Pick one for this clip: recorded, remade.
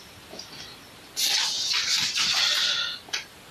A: recorded